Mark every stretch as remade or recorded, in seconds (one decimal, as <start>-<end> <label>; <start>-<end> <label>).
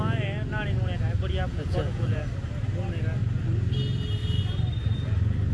0.0-1.5 recorded; 1.5-2.2 remade; 2.2-5.5 recorded